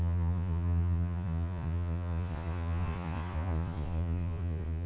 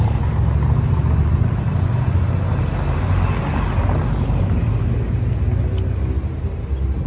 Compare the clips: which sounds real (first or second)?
second